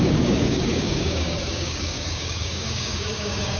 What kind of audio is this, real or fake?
fake